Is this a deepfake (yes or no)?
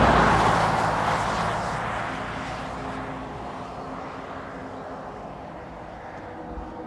no